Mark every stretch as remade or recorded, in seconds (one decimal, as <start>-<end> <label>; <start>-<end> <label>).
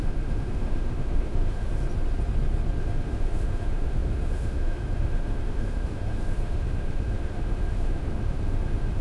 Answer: 0.0-1.7 remade; 1.7-2.8 recorded; 2.8-9.0 remade